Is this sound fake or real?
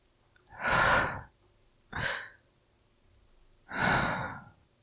real